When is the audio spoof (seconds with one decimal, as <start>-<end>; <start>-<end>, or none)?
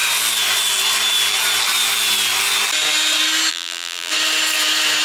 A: 3.5-4.1